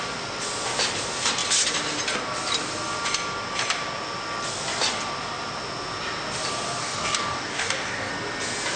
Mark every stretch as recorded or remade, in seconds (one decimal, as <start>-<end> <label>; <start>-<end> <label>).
0.0-6.8 recorded; 6.8-8.1 remade; 8.1-8.8 recorded

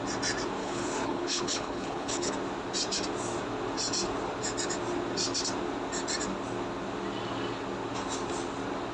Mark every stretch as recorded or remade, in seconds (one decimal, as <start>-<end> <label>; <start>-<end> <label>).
0.0-0.6 recorded; 0.6-2.3 remade; 2.3-8.9 recorded

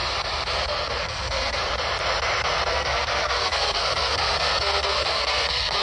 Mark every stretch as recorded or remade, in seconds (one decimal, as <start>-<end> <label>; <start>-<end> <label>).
0.0-0.9 recorded; 0.9-1.6 remade; 1.6-2.7 recorded; 2.7-5.8 remade